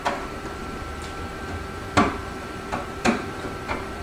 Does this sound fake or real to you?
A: fake